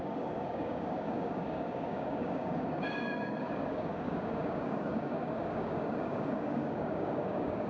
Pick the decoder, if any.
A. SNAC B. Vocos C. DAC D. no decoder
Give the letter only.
C